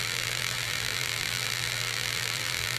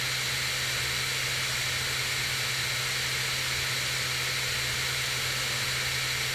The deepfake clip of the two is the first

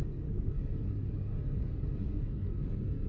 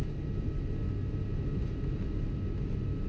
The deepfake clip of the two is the first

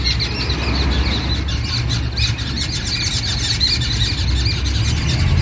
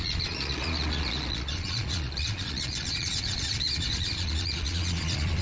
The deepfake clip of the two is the second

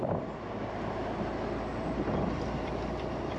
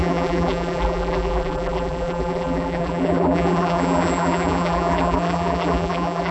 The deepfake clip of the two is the second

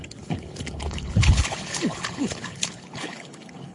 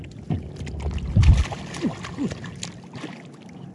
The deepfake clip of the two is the first